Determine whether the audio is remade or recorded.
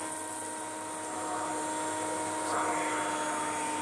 recorded